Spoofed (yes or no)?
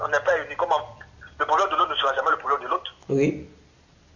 no